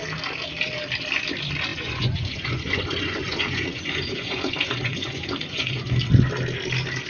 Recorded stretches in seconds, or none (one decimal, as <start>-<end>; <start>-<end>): 0.0-1.7; 6.0-7.1